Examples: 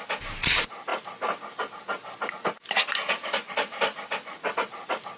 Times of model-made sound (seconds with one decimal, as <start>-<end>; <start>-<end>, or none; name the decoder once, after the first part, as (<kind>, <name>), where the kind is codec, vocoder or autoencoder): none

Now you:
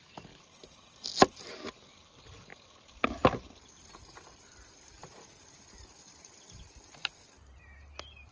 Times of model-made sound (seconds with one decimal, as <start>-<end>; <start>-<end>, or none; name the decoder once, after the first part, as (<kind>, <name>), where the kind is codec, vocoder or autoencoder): none

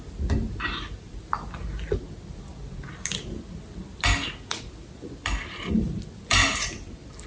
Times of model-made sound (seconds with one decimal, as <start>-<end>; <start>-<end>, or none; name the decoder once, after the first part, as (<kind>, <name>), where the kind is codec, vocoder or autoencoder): none